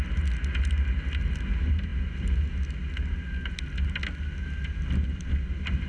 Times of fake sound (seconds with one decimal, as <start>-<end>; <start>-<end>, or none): none